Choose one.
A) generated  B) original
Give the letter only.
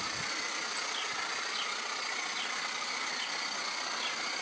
A